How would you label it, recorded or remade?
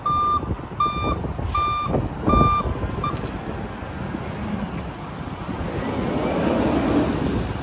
recorded